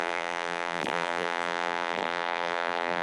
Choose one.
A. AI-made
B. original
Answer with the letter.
A